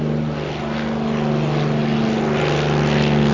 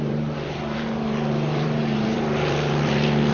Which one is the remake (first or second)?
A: second